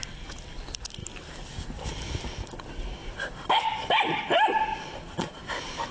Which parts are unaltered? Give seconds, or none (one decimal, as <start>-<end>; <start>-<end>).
0.0-4.7; 5.4-5.9